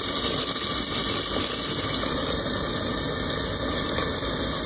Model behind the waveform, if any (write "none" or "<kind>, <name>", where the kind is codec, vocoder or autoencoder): none